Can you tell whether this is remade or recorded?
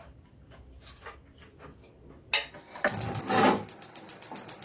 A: recorded